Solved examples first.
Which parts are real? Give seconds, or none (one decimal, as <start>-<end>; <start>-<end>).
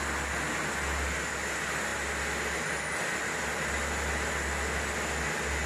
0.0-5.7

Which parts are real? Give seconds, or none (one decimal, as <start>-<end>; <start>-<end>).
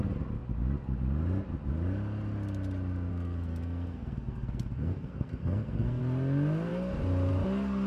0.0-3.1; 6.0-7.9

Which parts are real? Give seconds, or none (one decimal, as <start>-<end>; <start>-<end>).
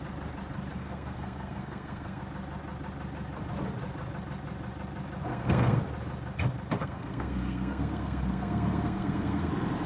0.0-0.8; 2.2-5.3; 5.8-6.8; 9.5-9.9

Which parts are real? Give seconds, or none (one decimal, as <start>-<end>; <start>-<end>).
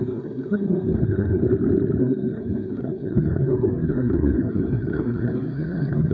1.4-2.0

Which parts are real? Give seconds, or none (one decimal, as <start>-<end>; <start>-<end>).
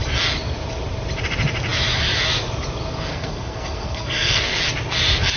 0.0-3.1; 4.6-5.4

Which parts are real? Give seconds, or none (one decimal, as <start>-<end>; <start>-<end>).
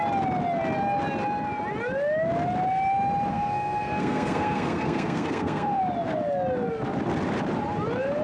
0.0-3.3; 5.8-8.2